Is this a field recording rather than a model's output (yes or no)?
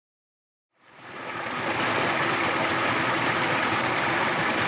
yes